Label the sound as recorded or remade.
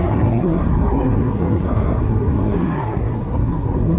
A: remade